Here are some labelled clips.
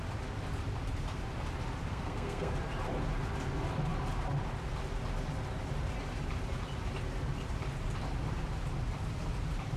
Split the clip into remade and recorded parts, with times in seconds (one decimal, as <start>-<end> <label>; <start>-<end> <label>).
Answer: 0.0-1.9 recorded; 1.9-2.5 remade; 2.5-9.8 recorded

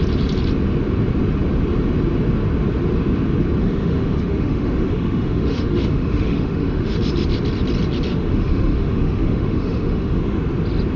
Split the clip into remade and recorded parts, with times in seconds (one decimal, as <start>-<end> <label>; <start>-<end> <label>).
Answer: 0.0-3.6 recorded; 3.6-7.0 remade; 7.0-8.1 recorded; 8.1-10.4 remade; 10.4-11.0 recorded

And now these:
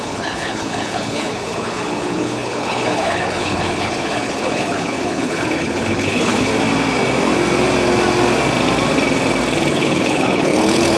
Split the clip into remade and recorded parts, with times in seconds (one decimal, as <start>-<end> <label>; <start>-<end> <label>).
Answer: 0.0-6.5 remade; 6.5-9.7 recorded; 9.7-11.0 remade

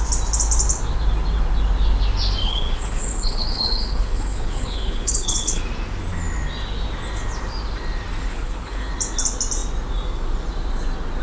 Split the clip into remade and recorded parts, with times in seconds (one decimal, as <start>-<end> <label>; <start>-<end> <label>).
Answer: 0.0-2.4 recorded; 2.4-5.6 remade; 5.6-8.3 recorded; 8.3-8.9 remade; 8.9-11.2 recorded

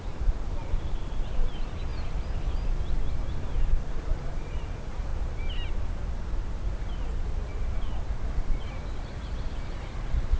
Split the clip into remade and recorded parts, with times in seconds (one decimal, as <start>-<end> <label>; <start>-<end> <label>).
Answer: 0.0-1.9 remade; 1.9-3.7 recorded; 3.7-5.1 remade; 5.1-8.3 recorded; 8.3-10.4 remade